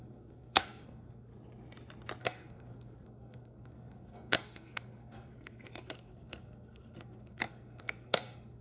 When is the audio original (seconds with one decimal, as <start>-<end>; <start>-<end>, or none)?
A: 1.3-2.2